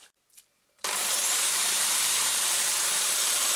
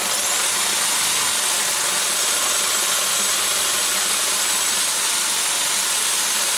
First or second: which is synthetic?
first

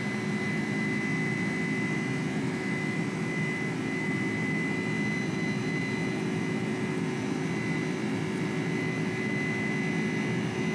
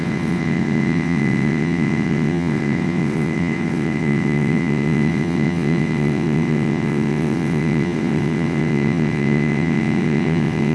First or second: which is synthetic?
second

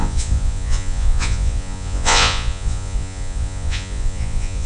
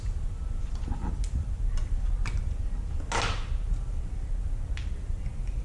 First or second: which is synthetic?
first